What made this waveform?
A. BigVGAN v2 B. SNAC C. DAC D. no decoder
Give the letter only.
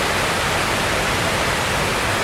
D